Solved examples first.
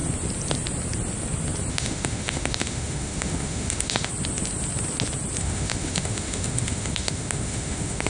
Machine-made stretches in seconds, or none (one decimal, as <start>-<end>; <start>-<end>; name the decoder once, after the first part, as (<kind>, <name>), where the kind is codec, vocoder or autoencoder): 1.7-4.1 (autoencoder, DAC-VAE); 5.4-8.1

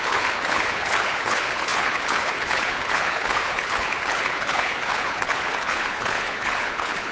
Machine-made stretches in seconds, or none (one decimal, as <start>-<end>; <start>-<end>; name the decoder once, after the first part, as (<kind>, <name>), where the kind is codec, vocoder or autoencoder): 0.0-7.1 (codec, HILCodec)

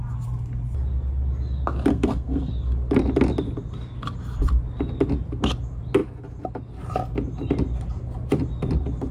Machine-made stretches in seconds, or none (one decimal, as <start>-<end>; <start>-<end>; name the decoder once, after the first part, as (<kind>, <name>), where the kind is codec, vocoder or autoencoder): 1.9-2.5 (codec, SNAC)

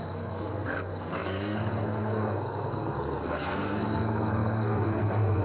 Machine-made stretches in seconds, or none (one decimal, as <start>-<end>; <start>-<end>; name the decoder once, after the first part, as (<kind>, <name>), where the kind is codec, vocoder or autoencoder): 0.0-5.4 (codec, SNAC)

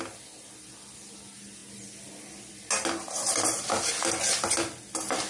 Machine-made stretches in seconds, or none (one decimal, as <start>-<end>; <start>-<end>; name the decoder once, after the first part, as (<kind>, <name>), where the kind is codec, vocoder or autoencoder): none

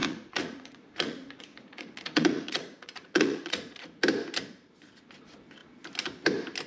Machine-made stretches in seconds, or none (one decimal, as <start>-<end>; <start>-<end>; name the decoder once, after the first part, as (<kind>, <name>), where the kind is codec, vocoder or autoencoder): 0.0-4.0 (vocoder, Vocos)